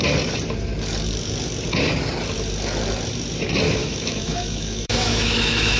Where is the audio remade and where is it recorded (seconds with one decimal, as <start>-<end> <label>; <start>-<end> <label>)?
0.0-3.8 recorded; 3.8-5.8 remade

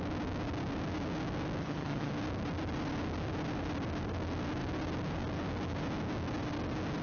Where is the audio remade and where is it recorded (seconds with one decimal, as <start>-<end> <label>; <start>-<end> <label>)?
0.0-1.6 recorded; 1.6-2.1 remade; 2.1-7.0 recorded

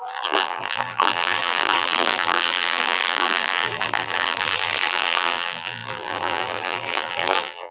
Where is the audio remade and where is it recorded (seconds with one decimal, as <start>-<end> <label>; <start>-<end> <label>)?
0.0-7.7 remade

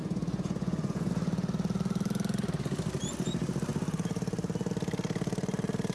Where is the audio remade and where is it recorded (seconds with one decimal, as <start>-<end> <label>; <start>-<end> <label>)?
0.0-1.1 remade; 1.1-5.9 recorded

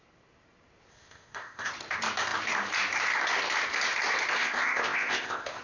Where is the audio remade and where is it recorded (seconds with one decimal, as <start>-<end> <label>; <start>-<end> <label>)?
0.0-0.9 recorded; 0.9-1.7 remade; 1.7-4.4 recorded; 4.4-5.6 remade

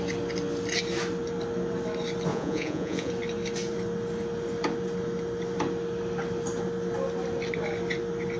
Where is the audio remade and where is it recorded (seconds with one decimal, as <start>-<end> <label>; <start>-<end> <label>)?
0.0-2.3 recorded; 2.3-3.1 remade; 3.1-8.4 recorded

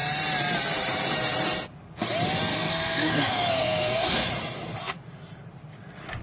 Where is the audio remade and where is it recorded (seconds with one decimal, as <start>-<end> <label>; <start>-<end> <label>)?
0.0-2.5 recorded; 2.5-4.3 remade; 4.3-6.2 recorded